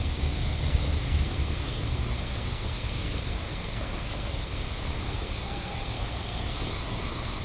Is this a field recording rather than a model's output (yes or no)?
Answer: no